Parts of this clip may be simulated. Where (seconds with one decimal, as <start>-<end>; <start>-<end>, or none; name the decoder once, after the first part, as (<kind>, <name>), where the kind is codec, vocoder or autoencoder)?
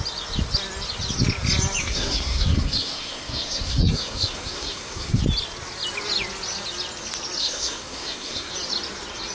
1.8-5.2 (codec, SNAC); 7.4-8.5